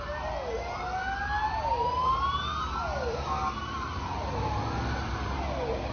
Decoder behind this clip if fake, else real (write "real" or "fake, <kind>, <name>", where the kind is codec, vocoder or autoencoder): real